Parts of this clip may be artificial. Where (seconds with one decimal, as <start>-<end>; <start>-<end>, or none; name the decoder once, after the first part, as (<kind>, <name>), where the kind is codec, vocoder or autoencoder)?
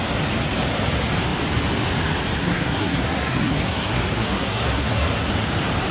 2.4-5.3 (codec, SNAC)